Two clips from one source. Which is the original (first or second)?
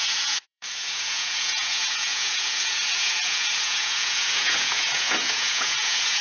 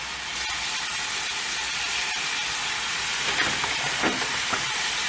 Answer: second